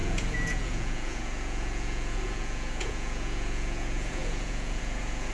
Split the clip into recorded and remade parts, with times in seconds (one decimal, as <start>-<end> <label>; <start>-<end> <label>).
0.0-5.3 remade